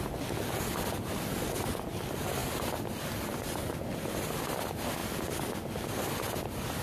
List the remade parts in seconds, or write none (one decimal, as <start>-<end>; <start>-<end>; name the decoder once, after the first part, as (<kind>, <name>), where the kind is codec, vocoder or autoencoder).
none